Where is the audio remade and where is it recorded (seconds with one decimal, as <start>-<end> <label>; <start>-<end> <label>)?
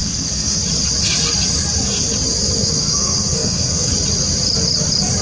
0.0-0.6 remade; 0.6-2.8 recorded; 2.8-3.9 remade; 3.9-5.2 recorded